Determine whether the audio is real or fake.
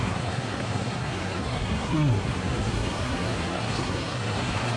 fake